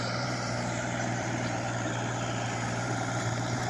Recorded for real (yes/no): no